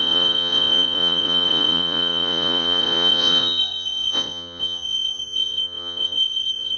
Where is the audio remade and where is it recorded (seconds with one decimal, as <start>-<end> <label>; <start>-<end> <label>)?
0.0-6.8 remade